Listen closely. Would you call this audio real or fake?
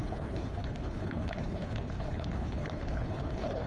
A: fake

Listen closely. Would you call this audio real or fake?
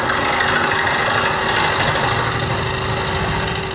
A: real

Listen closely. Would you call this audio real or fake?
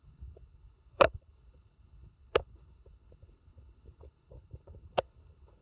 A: fake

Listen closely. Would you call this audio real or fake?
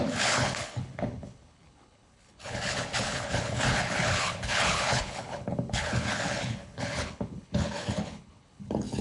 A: fake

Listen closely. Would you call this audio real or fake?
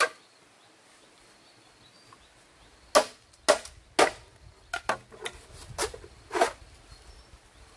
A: real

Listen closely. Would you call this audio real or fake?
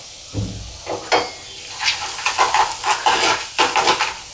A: real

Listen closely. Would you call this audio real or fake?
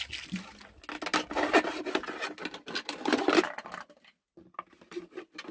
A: real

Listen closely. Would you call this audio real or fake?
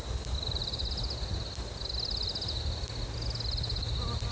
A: real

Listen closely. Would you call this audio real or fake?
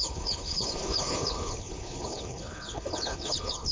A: fake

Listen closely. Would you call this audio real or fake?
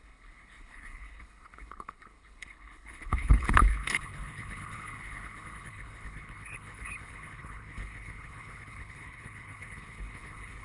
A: fake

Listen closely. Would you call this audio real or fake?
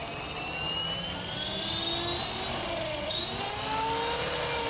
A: real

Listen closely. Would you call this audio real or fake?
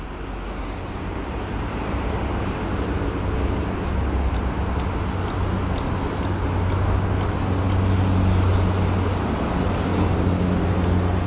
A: real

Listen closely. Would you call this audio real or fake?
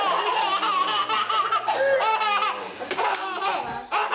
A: real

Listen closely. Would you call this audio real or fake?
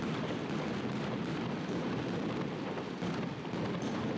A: real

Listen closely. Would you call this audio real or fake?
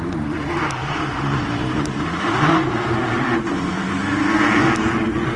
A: real